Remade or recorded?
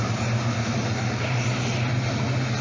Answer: recorded